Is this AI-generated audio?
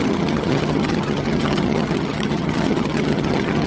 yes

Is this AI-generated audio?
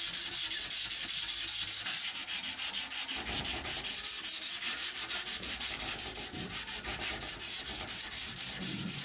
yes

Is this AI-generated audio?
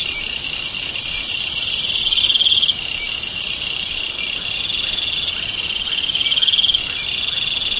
no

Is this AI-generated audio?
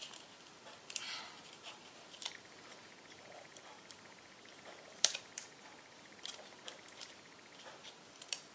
no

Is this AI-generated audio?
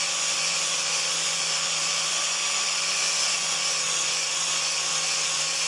yes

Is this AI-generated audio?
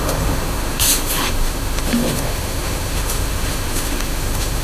yes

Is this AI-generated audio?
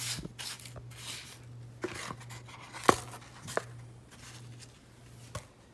no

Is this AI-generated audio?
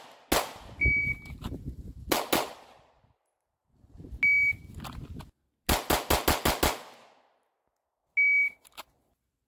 no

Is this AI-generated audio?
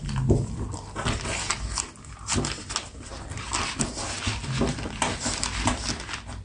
no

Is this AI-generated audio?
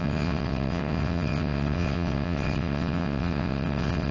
yes